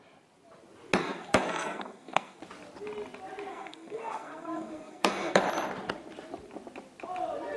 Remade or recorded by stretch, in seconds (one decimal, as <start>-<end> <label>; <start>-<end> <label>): 0.0-1.0 recorded; 1.0-2.4 remade; 2.4-3.5 recorded; 3.5-5.4 remade; 5.4-7.6 recorded